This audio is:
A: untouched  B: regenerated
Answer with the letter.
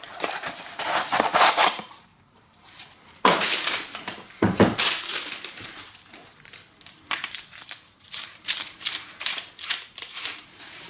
B